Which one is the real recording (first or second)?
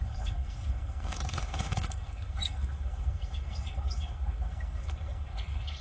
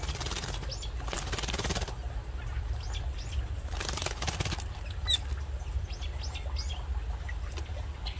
second